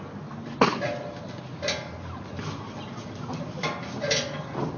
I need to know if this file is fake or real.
real